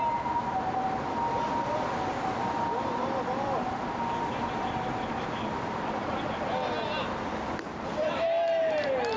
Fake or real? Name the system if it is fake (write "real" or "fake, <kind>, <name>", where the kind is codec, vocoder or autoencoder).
real